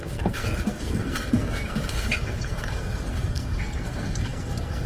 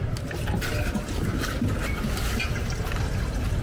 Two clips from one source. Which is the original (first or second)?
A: second